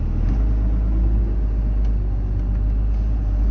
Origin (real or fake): real